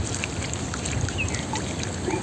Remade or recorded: recorded